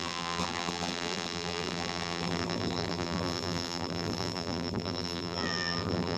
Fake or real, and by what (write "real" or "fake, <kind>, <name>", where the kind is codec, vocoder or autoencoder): fake, vocoder, BigVGAN v2